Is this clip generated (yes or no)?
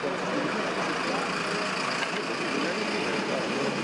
no